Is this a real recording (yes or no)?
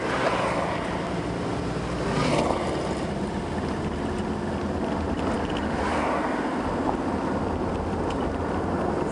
yes